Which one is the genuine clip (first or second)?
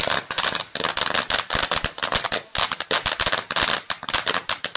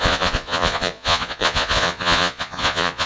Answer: first